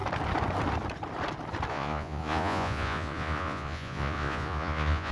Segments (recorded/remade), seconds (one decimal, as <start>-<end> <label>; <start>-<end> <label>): 0.0-1.7 recorded; 1.7-5.1 remade

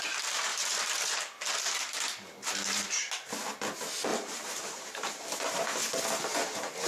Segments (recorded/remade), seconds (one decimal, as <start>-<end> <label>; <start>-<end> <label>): 0.0-0.5 recorded; 0.5-1.2 remade; 1.2-2.4 recorded; 2.4-3.0 remade; 3.0-4.1 recorded; 4.1-6.0 remade; 6.0-6.9 recorded

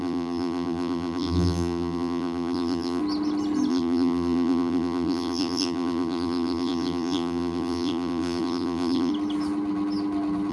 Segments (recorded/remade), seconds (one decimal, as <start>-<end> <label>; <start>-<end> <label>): 0.0-3.0 remade; 3.0-3.7 recorded; 3.7-9.1 remade; 9.1-10.5 recorded

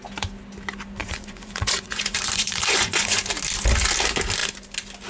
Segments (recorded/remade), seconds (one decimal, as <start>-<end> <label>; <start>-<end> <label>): 0.0-1.0 recorded; 1.0-3.2 remade; 3.2-5.1 recorded

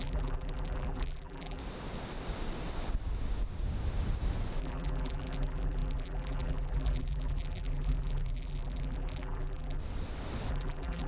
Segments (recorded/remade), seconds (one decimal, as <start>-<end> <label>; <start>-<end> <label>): 0.0-1.6 remade; 1.6-4.6 recorded; 4.6-9.8 remade; 9.8-10.5 recorded; 10.5-11.1 remade

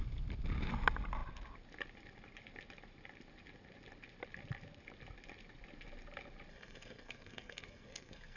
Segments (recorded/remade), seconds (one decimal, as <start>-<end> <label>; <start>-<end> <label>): 0.0-6.5 recorded; 6.5-8.4 remade